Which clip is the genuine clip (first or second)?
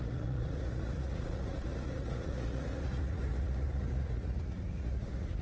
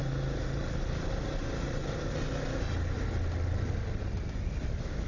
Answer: second